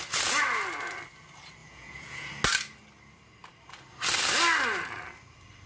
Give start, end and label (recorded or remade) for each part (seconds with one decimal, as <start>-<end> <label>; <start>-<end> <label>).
0.0-1.6 recorded; 1.6-2.3 remade; 2.3-5.7 recorded